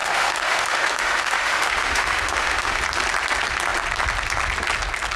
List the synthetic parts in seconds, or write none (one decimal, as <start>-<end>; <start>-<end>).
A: 0.0-2.8

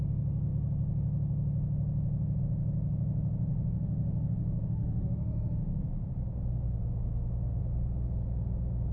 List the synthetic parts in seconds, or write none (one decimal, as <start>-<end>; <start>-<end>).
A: 3.5-5.8; 6.8-7.6

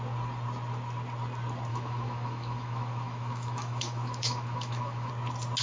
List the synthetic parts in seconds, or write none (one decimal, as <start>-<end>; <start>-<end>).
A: 1.7-5.1

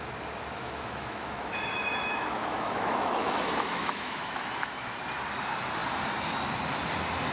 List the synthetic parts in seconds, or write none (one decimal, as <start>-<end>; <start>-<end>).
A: 0.6-5.0

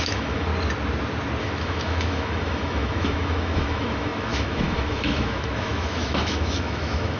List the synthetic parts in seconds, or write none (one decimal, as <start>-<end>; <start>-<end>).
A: 0.0-0.5; 1.4-7.2

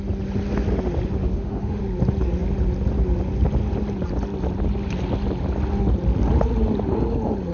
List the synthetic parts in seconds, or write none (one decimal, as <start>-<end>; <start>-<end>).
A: 1.2-1.8

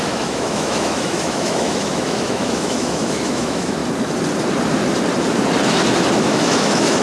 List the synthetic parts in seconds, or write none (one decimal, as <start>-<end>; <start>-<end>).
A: 0.0-3.8; 6.2-7.0

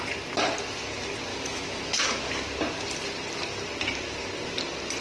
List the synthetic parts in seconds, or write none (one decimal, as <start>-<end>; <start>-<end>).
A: 1.3-2.3